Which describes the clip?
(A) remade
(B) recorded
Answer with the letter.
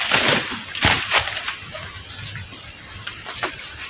B